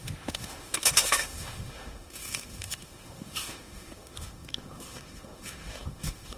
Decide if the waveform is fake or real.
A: fake